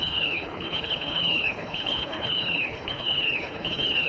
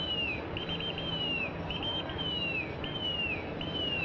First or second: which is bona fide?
second